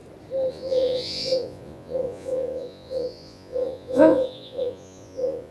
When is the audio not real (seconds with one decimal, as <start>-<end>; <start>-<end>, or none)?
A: 0.5-5.5